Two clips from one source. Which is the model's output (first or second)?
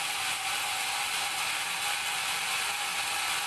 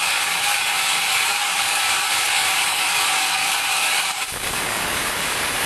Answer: second